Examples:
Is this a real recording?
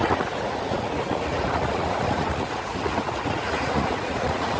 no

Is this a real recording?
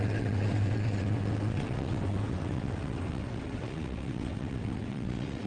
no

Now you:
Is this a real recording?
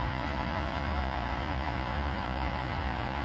no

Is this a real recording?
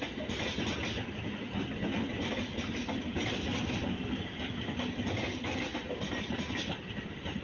yes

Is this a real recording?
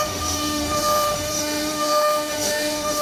no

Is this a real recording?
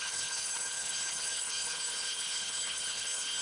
no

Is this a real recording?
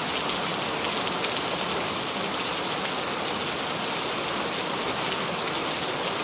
yes